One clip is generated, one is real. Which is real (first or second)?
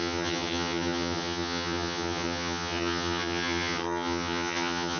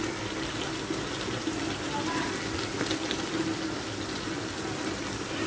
second